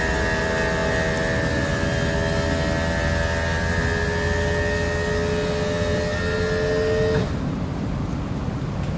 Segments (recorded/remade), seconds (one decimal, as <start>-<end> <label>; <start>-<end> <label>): 0.0-9.0 recorded